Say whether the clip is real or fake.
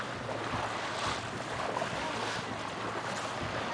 real